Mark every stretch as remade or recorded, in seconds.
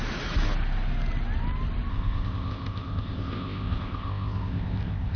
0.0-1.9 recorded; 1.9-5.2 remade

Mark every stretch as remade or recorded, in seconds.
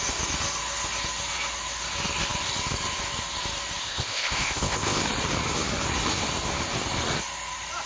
0.0-3.8 recorded; 3.8-5.0 remade; 5.0-7.9 recorded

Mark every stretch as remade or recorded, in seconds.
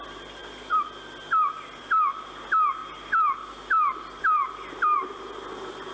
0.0-5.9 recorded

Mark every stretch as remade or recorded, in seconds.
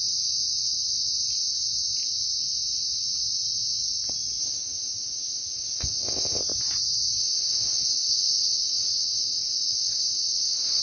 0.0-4.4 recorded; 4.4-6.4 remade; 6.4-7.2 recorded; 7.2-10.8 remade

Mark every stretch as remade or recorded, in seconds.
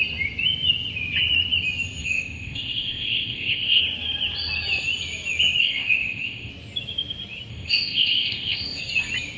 0.0-2.0 recorded; 2.0-3.8 remade; 3.8-5.6 recorded; 5.6-6.5 remade; 6.5-7.5 recorded; 7.5-8.8 remade; 8.8-9.4 recorded